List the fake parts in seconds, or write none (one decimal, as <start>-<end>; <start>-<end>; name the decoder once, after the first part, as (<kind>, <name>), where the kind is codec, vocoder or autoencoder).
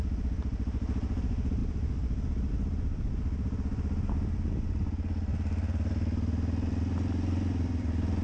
none